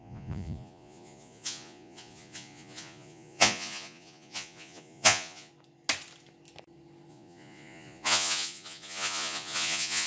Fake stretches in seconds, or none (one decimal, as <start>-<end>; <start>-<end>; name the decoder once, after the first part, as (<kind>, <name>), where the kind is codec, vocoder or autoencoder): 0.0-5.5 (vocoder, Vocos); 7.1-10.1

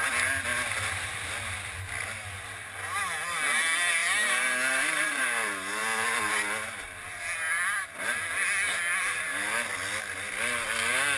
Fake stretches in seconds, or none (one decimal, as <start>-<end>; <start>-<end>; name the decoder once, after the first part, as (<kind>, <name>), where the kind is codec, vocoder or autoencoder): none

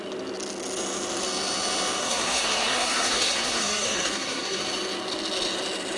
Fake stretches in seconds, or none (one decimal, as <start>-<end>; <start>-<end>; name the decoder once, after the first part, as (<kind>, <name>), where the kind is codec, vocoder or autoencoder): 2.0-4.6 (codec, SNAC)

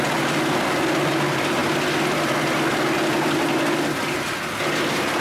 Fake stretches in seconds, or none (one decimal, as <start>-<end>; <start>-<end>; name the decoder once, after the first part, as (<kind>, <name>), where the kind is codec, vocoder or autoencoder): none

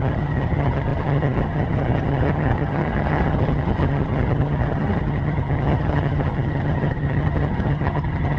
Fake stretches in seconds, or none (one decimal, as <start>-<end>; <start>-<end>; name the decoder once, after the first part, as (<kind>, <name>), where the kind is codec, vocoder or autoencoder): 0.0-8.4 (vocoder, HiFi-GAN)